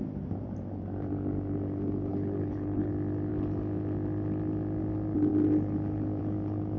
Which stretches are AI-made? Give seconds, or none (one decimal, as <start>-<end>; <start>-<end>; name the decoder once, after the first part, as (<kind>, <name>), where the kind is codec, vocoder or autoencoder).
2.1-2.9 (codec, HILCodec)